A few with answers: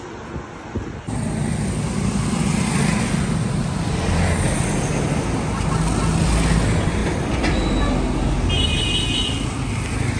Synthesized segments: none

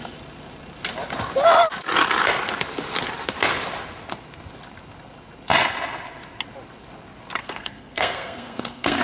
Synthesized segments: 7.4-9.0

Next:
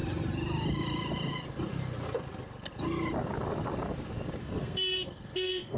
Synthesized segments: 4.4-5.8

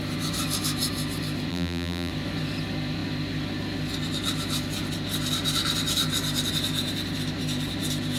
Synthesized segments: 1.5-2.1